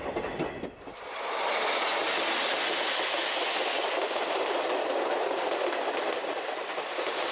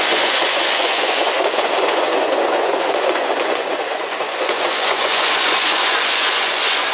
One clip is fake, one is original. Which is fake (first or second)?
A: second